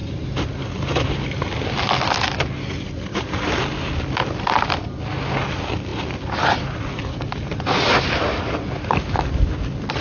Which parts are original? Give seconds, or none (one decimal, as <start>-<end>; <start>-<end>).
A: 0.0-3.1; 3.6-10.0

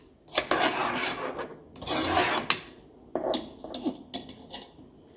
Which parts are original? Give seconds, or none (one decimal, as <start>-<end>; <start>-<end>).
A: 0.0-5.2

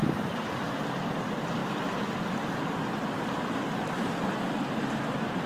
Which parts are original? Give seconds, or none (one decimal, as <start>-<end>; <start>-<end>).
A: 0.0-1.0; 1.6-4.8

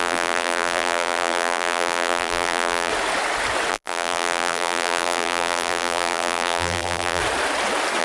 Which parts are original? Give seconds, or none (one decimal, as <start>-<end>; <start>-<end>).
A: 2.9-3.7; 7.2-8.0